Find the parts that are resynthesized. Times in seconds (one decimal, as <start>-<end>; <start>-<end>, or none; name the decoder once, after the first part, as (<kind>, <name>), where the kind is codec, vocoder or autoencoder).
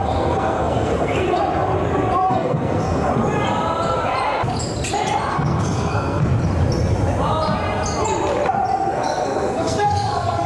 0.0-1.4 (codec, SNAC); 2.3-3.1; 5.3-6.3; 8.9-10.5